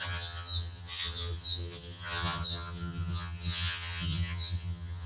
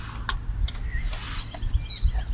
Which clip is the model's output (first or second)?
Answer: first